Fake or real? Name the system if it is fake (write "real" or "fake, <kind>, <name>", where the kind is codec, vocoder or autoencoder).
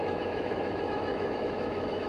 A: fake, autoencoder, DAC-VAE